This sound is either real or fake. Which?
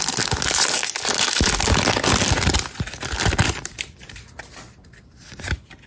real